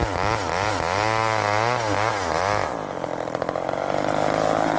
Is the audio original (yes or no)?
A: yes